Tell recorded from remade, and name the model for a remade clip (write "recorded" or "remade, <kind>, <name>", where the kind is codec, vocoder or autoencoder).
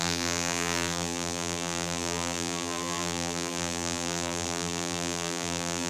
remade, vocoder, BigVGAN v2